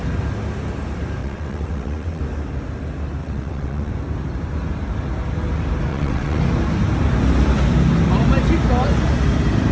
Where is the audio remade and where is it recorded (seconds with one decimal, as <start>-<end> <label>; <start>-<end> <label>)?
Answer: 0.0-1.2 recorded; 1.2-2.2 remade; 2.2-3.2 recorded; 3.2-3.9 remade; 3.9-5.9 recorded; 5.9-6.4 remade; 6.4-9.7 recorded